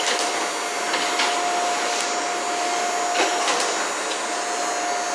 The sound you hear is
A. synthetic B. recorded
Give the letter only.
B